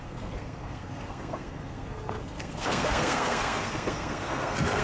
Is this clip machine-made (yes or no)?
yes